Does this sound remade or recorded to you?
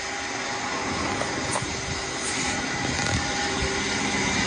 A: recorded